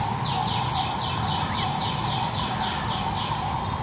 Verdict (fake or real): real